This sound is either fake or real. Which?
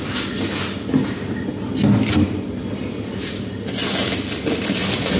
real